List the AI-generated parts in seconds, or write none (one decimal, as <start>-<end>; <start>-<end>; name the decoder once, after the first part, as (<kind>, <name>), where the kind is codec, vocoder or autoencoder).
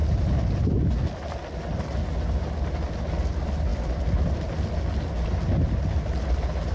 none